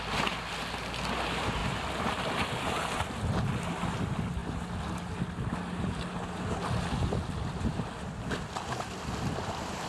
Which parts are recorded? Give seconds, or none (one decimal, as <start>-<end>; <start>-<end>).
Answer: 0.0-9.9